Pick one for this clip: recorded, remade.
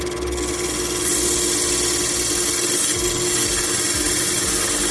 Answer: recorded